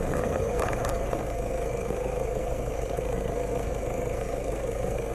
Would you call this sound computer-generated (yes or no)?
yes